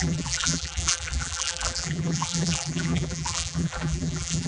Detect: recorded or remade remade